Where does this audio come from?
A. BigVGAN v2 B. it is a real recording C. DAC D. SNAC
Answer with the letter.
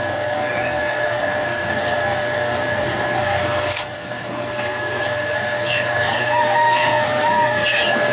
D